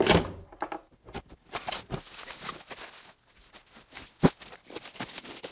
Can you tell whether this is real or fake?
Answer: real